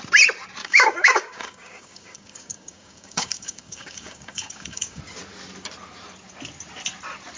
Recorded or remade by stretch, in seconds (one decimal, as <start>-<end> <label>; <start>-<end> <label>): 0.0-0.6 recorded; 0.6-5.0 remade; 5.0-7.4 recorded

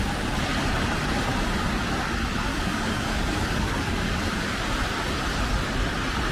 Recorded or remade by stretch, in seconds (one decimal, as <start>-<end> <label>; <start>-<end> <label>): 0.0-2.5 recorded; 2.5-4.6 remade; 4.6-6.3 recorded

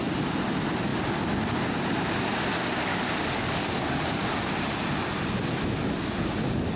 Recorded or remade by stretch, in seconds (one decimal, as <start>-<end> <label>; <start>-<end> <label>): 0.0-2.9 recorded; 2.9-4.2 remade; 4.2-6.8 recorded

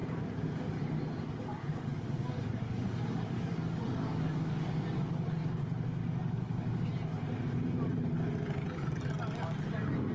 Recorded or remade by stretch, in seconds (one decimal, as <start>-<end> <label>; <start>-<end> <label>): 0.0-1.3 recorded; 1.3-4.7 remade; 4.7-6.0 recorded; 6.0-6.9 remade; 6.9-10.1 recorded